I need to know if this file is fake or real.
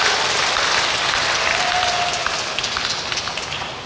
real